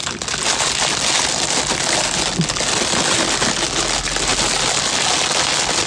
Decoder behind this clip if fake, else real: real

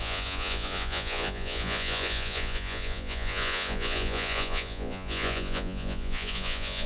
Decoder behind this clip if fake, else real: fake, vocoder, Vocos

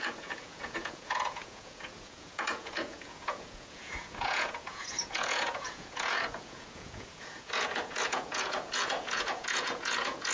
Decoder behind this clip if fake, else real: fake, vocoder, Vocos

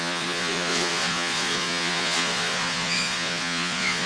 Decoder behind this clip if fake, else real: fake, vocoder, Vocos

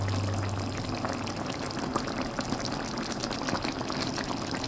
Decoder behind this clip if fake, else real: real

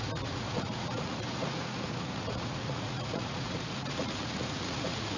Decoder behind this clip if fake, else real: fake, vocoder, Vocos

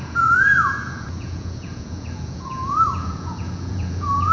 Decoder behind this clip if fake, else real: fake, vocoder, Vocos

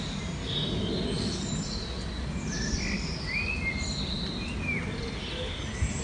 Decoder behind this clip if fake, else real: real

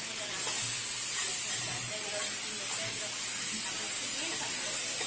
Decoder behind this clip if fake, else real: real